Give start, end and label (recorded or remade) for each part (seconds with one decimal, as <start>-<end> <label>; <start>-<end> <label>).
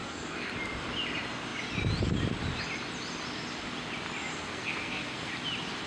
0.0-0.5 remade; 0.5-4.3 recorded; 4.3-5.3 remade; 5.3-5.9 recorded